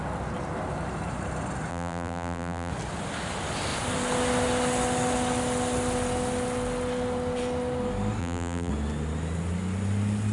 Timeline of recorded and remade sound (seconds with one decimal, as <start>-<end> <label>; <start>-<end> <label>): 0.0-1.7 recorded; 1.7-2.7 remade; 2.7-8.2 recorded; 8.2-8.7 remade; 8.7-10.3 recorded